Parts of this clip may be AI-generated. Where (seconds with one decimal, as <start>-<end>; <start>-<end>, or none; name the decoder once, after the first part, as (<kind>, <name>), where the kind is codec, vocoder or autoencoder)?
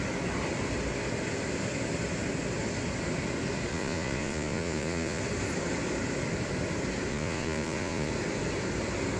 3.7-5.2 (vocoder, Vocos); 7.1-8.1